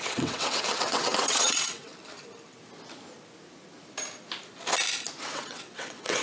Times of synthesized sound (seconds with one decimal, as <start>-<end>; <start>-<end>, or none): 0.0-1.9; 5.2-6.2

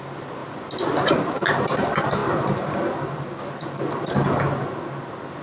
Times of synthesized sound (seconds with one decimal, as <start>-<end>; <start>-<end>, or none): 0.0-0.4; 1.1-2.2

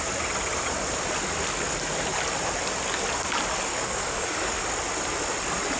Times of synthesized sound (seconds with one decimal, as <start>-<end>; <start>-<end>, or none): 3.7-4.6

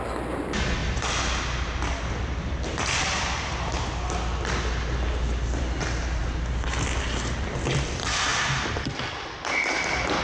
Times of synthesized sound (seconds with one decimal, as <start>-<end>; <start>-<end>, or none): 8.3-10.2

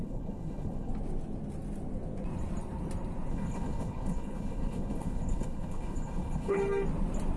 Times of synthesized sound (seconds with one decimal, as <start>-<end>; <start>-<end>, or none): 0.0-0.9; 3.3-6.6

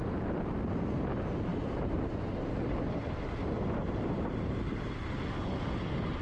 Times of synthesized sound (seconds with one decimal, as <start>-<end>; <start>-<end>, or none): 1.5-5.2

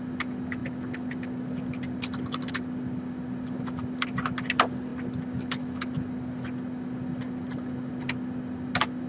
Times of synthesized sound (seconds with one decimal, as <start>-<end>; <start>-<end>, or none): none